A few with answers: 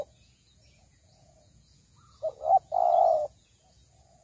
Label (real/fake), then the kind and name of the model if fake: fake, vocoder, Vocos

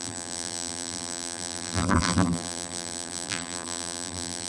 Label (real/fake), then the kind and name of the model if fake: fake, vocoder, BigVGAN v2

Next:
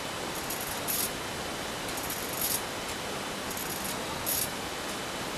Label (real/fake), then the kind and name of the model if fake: real